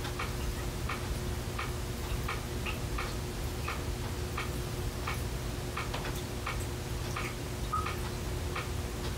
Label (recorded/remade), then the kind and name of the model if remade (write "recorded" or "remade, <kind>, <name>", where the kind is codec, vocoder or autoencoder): recorded